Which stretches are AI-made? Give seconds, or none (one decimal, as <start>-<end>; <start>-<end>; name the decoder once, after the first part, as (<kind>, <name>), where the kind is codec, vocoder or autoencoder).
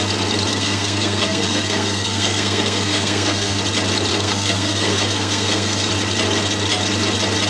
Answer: 0.5-3.6 (codec, SNAC); 4.1-5.9